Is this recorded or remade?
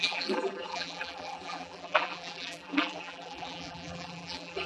remade